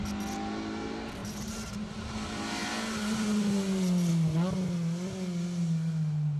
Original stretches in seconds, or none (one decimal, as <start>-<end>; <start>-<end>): 0.0-1.2; 2.1-6.4